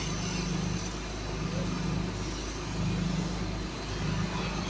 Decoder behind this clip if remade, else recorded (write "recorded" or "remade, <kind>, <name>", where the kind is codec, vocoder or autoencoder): recorded